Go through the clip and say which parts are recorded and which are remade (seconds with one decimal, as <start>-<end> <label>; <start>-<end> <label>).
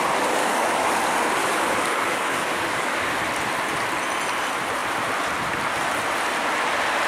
0.0-0.4 recorded; 0.4-0.9 remade; 0.9-1.4 recorded; 1.4-3.2 remade; 3.2-7.1 recorded